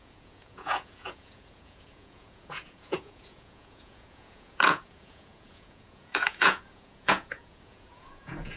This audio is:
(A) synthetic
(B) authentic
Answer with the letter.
A